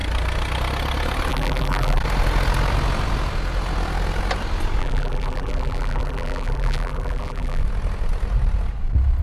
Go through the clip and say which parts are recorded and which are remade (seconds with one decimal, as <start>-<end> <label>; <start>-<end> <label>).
0.0-1.3 recorded; 1.3-2.0 remade; 2.0-4.8 recorded; 4.8-7.6 remade; 7.6-9.2 recorded